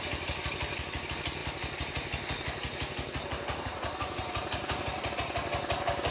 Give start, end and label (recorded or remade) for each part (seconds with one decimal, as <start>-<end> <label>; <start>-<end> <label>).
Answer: 0.0-6.1 recorded